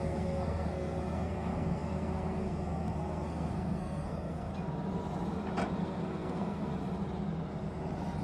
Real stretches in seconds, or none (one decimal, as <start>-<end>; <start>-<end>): 4.5-5.8; 6.7-8.2